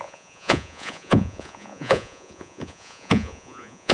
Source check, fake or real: fake